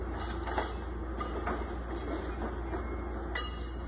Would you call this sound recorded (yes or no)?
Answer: yes